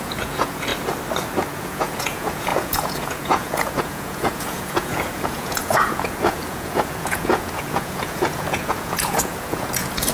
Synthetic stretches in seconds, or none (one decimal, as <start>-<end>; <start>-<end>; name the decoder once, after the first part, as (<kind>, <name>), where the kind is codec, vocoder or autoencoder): 0.0-0.7 (vocoder, Vocos); 1.6-10.1